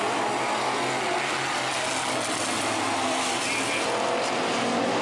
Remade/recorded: recorded